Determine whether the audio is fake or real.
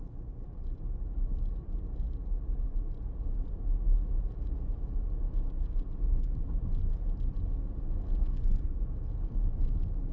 real